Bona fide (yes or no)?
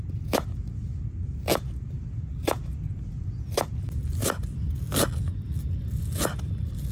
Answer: yes